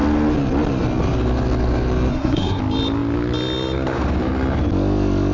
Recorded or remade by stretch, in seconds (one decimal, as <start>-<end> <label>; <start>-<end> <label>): 0.0-2.1 recorded; 2.1-2.6 remade; 2.6-5.3 recorded